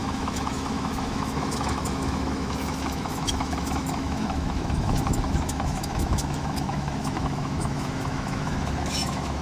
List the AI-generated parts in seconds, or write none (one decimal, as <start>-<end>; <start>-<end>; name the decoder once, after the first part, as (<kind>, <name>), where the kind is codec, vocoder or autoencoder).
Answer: 0.0-9.4 (autoencoder, DAC-VAE)

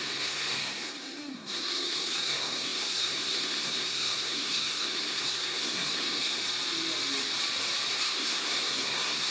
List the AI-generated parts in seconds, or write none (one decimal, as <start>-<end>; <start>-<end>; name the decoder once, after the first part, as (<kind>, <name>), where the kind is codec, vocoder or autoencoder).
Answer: 0.0-6.4 (codec, SNAC); 7.9-9.3